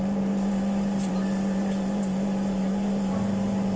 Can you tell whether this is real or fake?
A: fake